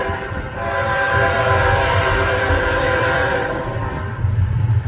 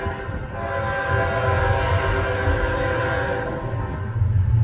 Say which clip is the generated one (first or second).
first